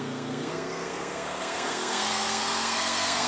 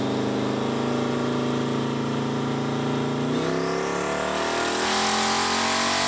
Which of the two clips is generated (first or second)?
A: first